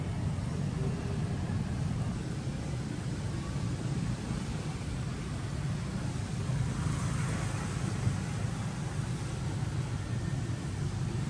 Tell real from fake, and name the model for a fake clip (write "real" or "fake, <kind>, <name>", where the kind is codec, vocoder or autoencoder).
real